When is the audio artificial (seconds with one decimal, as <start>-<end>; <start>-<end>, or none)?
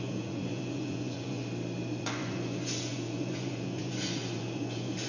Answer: 0.0-1.4; 2.0-5.1